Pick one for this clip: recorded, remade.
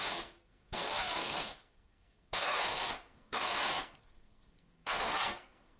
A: remade